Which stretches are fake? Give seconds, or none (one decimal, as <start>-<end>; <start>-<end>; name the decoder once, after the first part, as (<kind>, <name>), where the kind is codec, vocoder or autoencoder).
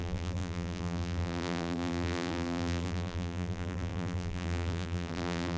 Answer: 0.0-5.6 (vocoder, BigVGAN v2)